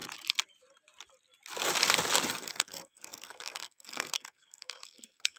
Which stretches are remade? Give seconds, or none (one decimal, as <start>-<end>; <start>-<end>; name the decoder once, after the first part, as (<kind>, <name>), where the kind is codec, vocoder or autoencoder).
2.3-5.4 (codec, SNAC)